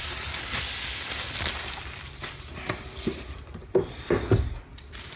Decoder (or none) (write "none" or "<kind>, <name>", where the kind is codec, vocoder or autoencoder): none